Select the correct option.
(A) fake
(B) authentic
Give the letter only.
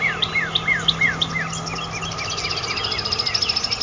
B